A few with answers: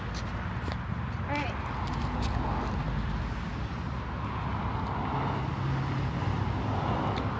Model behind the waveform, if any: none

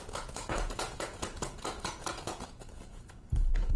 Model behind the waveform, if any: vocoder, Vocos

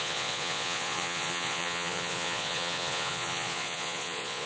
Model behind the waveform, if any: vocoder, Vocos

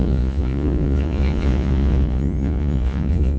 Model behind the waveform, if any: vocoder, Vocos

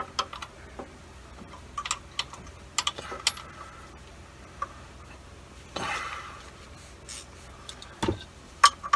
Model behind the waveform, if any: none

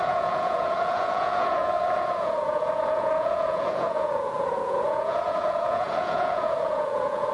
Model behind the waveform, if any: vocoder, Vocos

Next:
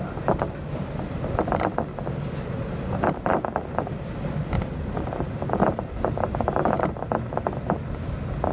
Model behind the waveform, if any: none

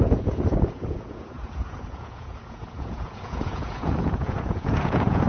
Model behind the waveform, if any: vocoder, Vocos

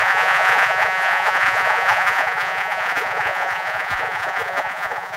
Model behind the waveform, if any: vocoder, Vocos